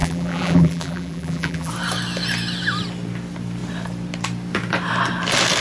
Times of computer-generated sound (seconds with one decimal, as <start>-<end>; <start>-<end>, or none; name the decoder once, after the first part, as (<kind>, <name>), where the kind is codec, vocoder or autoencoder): 0.0-1.7 (vocoder, BigVGAN v2)